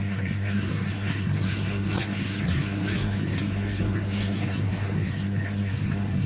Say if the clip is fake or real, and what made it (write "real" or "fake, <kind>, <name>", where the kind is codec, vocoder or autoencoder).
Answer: fake, codec, SNAC